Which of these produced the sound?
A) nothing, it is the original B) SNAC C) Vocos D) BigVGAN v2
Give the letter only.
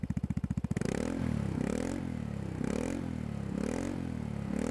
A